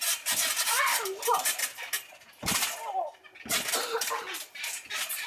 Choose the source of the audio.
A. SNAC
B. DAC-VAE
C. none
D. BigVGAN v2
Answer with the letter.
C